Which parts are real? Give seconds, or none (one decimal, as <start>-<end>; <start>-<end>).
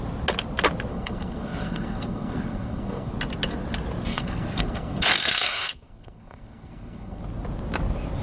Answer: 0.0-0.9; 3.1-4.1; 7.2-8.2